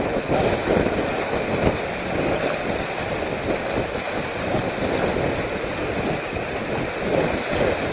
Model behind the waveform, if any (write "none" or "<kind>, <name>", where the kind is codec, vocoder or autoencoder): none